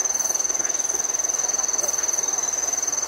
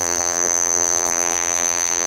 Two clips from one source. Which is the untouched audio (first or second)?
first